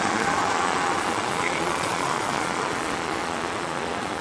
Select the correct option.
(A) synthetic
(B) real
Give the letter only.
A